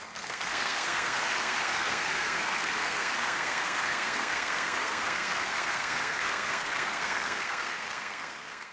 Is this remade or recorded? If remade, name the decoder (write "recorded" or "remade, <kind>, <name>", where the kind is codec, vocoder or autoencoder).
remade, codec, SNAC